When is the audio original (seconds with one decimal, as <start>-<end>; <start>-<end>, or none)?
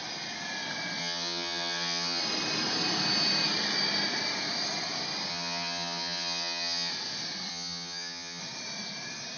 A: 0.0-1.0; 2.2-5.3; 6.9-7.5; 8.4-9.4